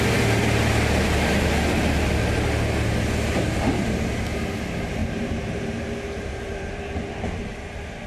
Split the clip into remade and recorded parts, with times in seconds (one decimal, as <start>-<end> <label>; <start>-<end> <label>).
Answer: 0.0-5.0 recorded; 5.0-6.8 remade; 6.8-8.1 recorded